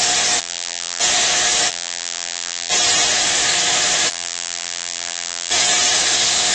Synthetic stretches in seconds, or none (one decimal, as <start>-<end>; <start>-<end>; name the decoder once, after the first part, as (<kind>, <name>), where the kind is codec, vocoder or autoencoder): 0.4-1.0 (vocoder, BigVGAN v2); 1.7-2.7; 4.1-5.5